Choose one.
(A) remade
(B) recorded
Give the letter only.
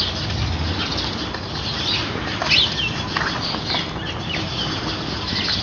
B